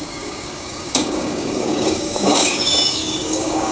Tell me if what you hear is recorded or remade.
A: remade